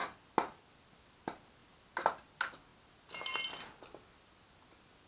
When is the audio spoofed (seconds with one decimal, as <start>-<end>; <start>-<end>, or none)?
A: none